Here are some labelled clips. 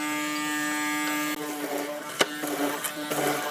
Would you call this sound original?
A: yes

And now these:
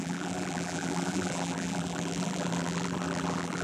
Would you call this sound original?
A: no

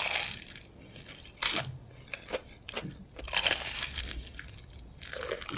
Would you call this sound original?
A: yes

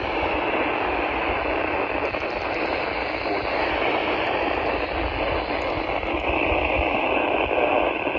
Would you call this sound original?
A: yes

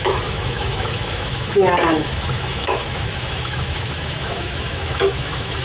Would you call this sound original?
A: no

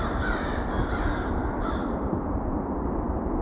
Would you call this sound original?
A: yes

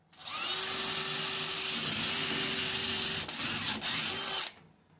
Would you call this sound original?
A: yes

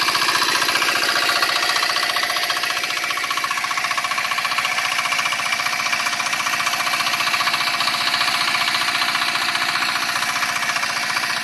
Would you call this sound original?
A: yes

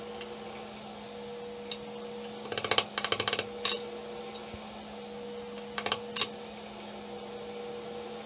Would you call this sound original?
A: yes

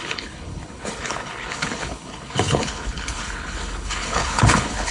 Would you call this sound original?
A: no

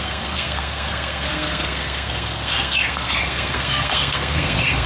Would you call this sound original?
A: no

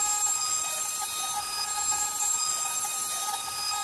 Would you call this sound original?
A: yes